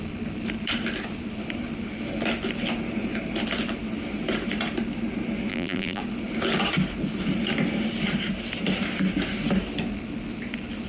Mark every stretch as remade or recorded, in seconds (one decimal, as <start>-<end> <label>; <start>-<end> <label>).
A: 0.0-5.5 recorded; 5.5-6.0 remade; 6.0-10.9 recorded